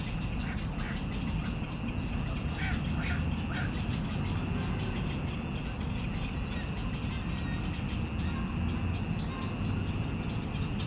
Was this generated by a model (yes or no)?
no